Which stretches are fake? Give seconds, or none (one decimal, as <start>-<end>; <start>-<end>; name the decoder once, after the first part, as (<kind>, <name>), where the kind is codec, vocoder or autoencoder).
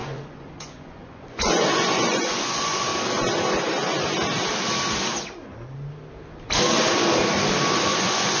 0.0-2.9 (vocoder, Vocos); 7.7-8.4